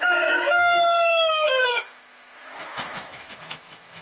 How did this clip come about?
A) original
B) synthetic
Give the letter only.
B